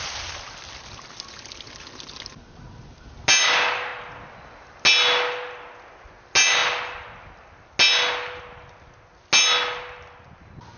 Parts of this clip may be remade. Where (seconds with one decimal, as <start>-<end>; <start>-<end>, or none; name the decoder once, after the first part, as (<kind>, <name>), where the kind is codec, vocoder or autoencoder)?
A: none